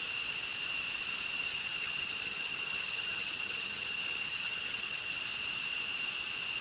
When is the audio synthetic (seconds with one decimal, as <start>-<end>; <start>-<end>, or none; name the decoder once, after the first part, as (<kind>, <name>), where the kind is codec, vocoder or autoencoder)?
1.5-5.1 (vocoder, HiFi-GAN)